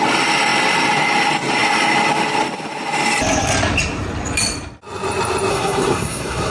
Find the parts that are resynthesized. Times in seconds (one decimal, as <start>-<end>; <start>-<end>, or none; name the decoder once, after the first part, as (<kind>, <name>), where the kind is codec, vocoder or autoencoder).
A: 5.5-6.5 (codec, SNAC)